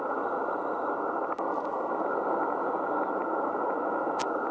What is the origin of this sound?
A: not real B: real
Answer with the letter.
B